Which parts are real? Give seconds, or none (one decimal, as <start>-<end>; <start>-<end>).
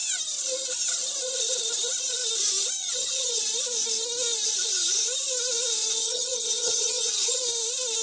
0.0-2.8; 3.4-6.0; 7.4-8.0